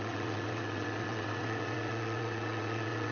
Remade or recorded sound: remade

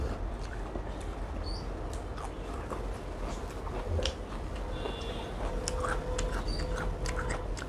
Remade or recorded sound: recorded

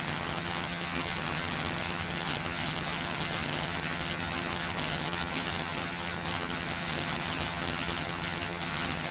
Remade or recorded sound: remade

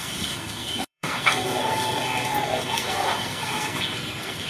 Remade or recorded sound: remade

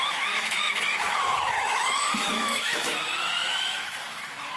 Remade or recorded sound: remade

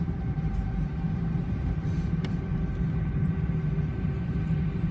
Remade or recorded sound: remade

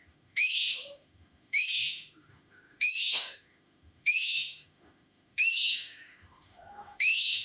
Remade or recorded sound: remade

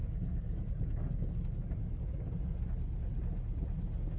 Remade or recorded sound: recorded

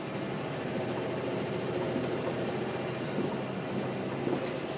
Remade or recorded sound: recorded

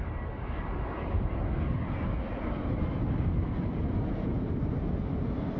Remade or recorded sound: recorded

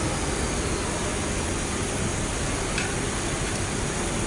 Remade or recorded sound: recorded